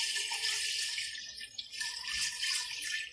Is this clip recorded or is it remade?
remade